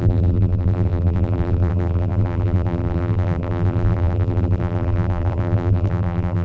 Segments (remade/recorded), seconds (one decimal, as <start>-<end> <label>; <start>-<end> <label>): 0.0-6.4 remade